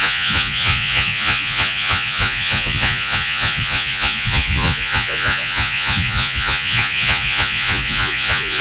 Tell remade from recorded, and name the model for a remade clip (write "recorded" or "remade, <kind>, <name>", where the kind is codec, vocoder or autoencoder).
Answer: remade, vocoder, Vocos